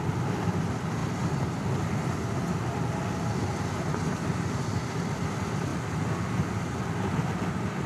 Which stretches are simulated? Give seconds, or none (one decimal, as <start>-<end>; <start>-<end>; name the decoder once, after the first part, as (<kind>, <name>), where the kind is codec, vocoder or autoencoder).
0.0-1.0 (vocoder, BigVGAN v2); 4.2-5.7